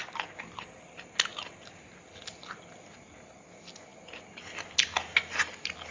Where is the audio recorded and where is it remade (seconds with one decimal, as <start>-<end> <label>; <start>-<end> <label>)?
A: 0.0-5.9 recorded